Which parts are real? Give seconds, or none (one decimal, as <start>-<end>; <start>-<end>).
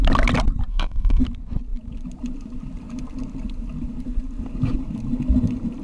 0.0-0.7; 1.2-5.8